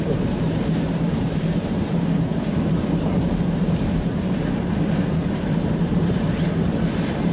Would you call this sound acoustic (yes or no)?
no